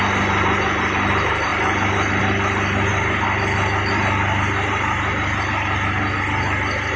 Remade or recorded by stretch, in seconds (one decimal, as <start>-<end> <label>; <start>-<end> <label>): 0.0-7.0 recorded